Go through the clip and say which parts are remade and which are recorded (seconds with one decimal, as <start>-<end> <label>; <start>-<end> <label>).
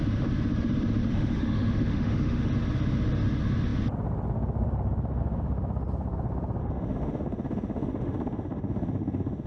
0.0-1.0 recorded; 1.0-2.5 remade; 2.5-6.6 recorded; 6.6-9.5 remade